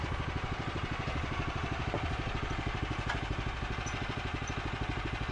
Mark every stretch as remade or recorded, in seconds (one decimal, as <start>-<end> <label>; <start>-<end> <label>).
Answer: 0.0-5.3 recorded